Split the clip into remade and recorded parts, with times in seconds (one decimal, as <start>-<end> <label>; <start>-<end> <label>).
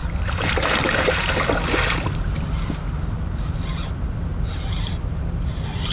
0.0-5.9 recorded